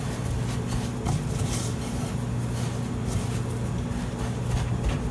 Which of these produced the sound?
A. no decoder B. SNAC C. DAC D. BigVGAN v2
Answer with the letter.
A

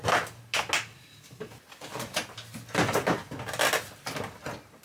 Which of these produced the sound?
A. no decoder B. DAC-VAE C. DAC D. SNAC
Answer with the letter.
A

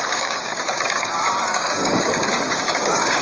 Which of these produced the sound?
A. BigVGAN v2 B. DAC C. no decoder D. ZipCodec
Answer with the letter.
B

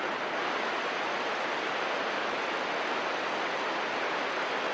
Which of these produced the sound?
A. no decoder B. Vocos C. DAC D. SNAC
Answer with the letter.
A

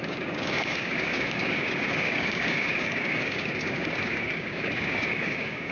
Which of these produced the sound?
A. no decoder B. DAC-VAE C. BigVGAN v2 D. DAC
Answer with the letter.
D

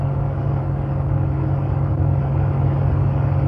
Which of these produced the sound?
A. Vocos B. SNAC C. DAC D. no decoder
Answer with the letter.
C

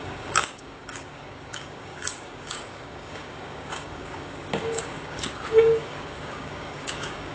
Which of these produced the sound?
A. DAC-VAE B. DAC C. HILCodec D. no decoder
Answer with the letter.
B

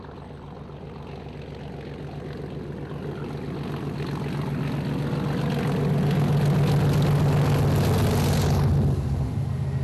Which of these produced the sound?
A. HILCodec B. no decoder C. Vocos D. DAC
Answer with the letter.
B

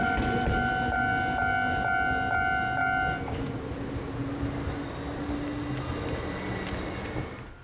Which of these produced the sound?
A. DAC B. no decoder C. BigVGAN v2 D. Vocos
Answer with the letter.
B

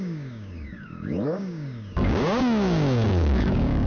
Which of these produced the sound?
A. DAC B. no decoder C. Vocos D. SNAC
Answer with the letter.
A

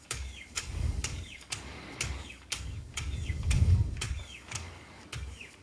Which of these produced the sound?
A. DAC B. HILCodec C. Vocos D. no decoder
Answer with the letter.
A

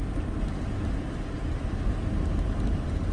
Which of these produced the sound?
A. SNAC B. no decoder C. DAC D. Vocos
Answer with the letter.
B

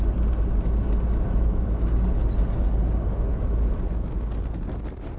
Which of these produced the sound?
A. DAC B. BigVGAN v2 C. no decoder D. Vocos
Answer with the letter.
C